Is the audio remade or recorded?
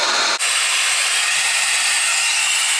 recorded